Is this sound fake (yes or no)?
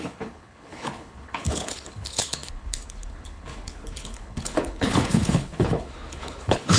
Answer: yes